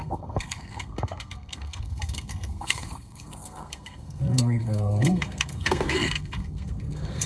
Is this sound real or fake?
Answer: fake